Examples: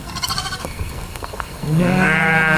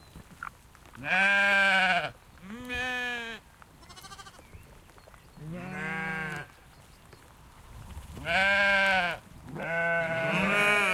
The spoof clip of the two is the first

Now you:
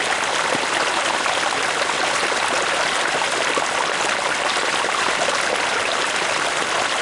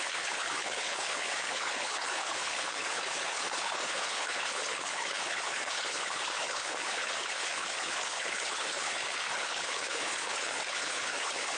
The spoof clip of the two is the second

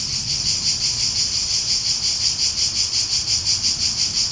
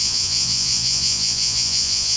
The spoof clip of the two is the second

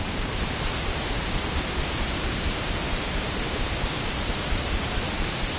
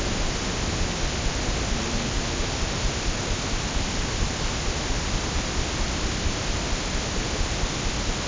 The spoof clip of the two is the first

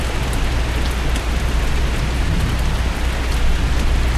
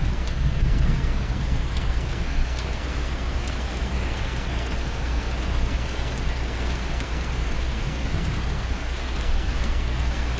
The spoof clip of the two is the second